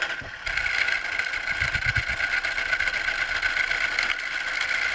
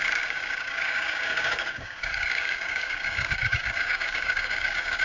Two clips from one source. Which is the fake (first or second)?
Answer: second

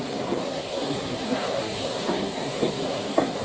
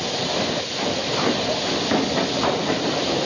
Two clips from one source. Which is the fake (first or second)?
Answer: first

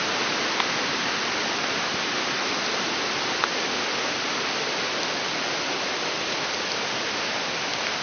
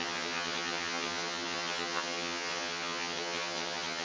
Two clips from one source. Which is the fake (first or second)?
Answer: second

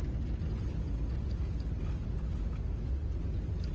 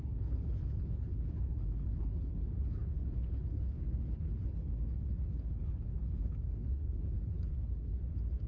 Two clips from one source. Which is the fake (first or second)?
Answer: second